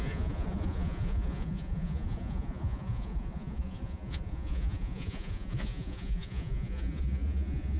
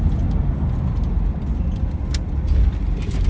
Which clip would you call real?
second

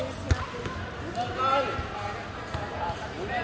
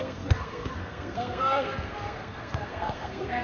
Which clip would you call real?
first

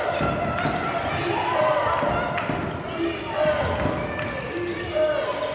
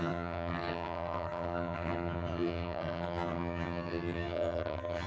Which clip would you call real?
first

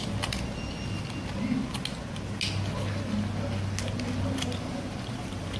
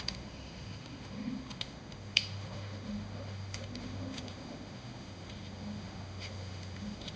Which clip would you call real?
first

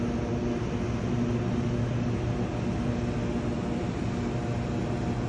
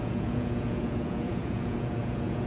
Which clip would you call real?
first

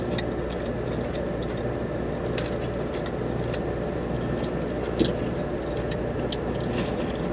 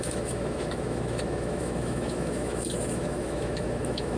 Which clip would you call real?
first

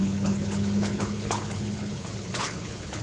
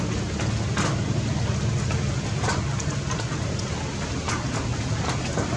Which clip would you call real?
second